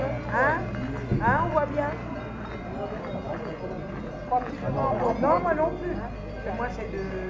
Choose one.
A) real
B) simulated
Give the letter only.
A